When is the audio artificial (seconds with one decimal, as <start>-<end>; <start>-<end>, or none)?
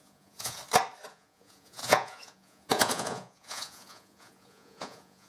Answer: 0.0-0.6; 1.1-5.3